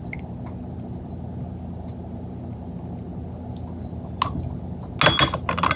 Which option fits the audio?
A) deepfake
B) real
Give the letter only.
B